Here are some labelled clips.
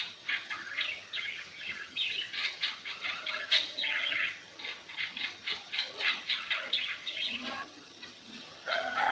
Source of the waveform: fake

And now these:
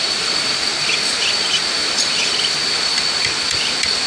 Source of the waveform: real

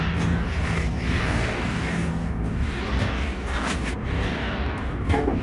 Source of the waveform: fake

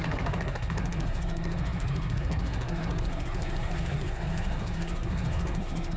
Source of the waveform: fake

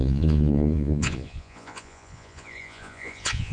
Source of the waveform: fake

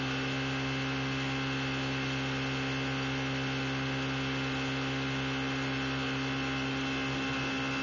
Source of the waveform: real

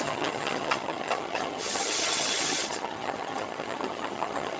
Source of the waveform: fake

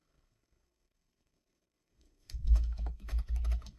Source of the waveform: fake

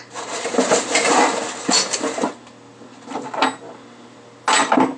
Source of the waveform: real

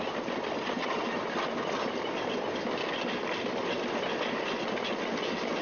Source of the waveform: real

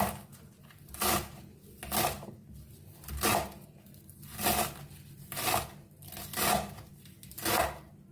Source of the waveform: real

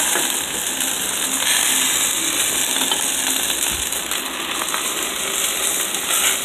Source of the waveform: real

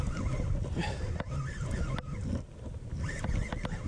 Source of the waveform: real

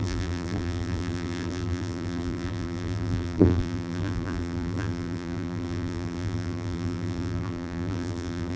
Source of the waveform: fake